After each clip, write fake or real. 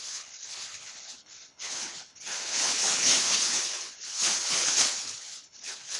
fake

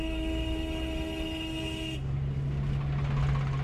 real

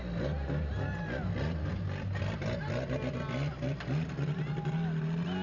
real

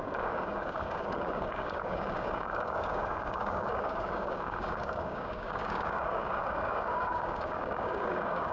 fake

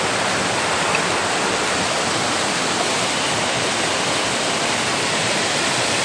real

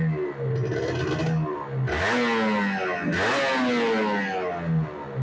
real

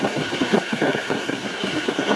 fake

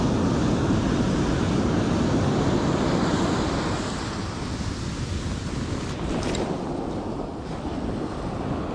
real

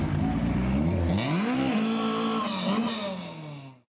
real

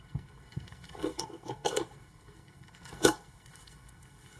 fake